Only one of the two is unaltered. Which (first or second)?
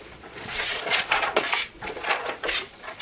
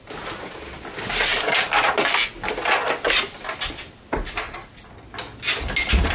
second